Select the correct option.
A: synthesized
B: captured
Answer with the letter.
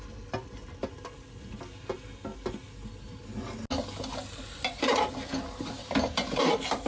B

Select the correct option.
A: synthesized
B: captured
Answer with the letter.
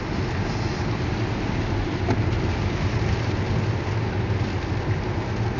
B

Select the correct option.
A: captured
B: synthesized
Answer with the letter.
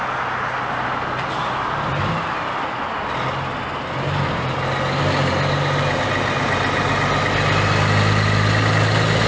A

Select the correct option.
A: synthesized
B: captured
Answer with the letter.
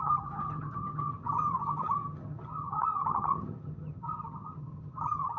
A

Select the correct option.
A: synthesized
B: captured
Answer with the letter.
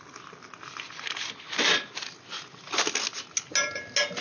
B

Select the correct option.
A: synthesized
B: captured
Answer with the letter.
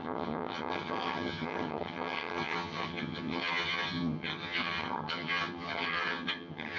A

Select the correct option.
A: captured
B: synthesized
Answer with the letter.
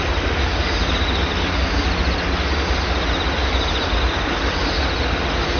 A